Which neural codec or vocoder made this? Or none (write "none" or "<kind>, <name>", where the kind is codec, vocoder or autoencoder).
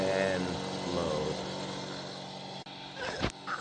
none